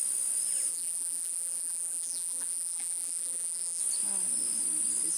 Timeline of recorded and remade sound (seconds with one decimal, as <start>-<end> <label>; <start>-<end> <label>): 0.0-0.7 recorded; 0.7-3.8 remade; 3.8-5.2 recorded